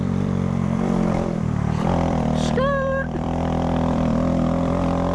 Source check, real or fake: fake